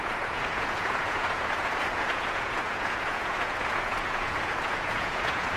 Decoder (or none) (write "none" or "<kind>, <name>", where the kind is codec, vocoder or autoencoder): vocoder, Vocos